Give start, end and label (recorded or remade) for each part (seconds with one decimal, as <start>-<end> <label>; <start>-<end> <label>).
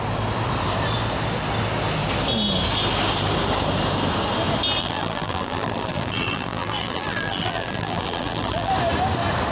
0.0-4.8 recorded; 4.8-8.7 remade; 8.7-9.5 recorded